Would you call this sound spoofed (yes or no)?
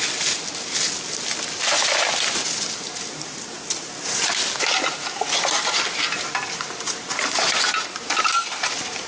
no